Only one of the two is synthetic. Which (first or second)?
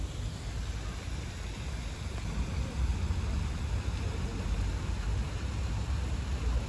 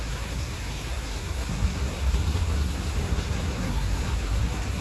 second